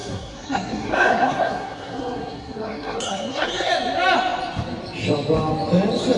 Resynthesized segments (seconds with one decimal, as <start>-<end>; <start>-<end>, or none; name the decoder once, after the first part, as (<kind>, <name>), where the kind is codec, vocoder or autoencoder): 0.0-3.7 (codec, SNAC)